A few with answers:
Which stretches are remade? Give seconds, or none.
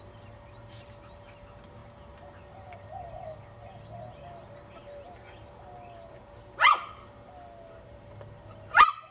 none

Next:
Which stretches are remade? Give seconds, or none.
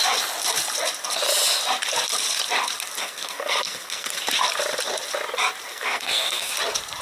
3.0-4.3; 5.7-6.5